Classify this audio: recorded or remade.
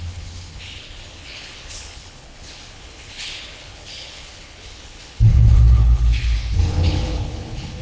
remade